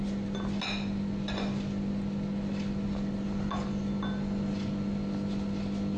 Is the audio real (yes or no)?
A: yes